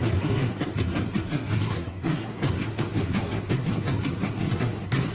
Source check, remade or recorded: remade